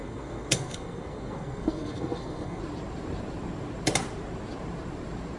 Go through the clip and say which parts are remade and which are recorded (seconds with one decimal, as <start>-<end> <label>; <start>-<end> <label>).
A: 0.0-2.6 remade; 2.6-5.4 recorded